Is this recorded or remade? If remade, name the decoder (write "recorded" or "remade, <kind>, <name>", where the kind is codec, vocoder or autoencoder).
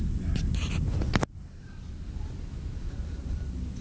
recorded